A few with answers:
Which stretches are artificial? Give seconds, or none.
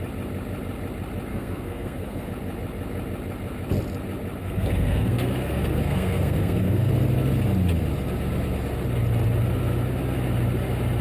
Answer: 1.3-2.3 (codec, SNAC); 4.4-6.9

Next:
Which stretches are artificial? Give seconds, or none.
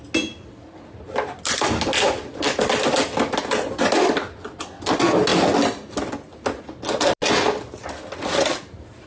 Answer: none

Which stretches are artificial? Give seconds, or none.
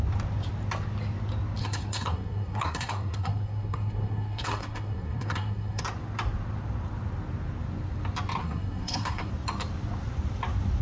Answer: 1.6-5.8 (codec, SNAC); 8.4-9.3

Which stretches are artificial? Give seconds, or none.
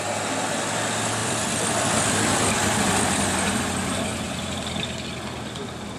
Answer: 1.2-3.5 (vocoder, BigVGAN v2); 4.1-5.1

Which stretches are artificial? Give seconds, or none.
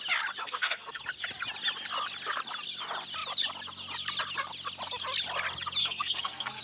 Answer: 0.4-1.0 (codec, SNAC); 5.8-6.6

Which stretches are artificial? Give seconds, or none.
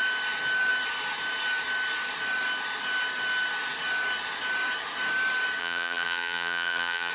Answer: 5.6-7.1 (vocoder, BigVGAN v2)